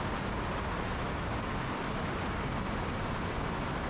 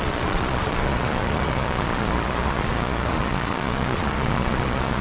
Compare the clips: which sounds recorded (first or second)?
first